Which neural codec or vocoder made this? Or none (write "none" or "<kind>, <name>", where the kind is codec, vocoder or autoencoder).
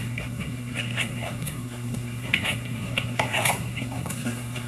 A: codec, SNAC